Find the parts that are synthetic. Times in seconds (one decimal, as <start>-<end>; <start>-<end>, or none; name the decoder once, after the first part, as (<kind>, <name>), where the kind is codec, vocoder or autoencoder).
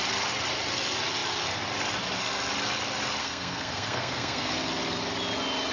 3.2-4.5 (codec, SNAC)